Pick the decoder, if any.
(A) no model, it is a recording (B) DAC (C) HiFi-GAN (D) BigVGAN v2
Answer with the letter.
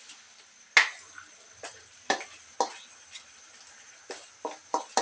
A